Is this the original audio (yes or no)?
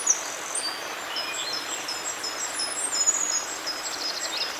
yes